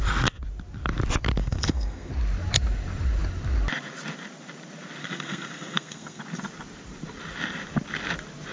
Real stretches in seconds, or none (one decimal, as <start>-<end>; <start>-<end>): 0.0-1.4; 2.1-5.0; 6.2-8.5